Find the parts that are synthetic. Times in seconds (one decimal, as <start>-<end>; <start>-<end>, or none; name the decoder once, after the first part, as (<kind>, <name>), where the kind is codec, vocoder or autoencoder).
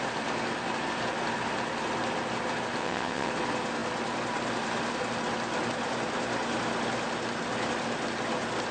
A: 2.8-3.3 (vocoder, WaveNeXt)